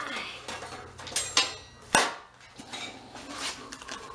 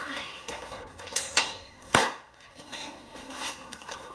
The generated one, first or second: second